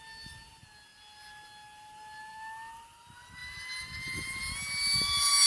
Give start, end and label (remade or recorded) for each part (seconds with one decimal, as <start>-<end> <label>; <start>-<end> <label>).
0.0-3.4 recorded; 3.4-4.4 remade; 4.4-5.5 recorded